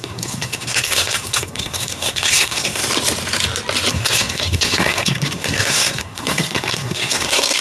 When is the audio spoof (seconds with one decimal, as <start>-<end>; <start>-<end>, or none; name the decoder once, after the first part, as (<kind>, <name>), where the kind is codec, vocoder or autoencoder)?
0.0-2.8 (codec, SNAC); 3.9-7.6